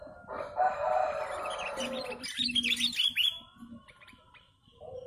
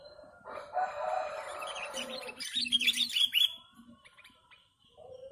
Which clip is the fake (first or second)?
second